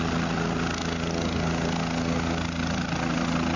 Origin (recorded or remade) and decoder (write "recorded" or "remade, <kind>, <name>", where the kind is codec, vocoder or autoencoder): recorded